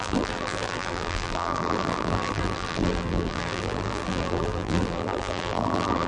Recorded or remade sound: remade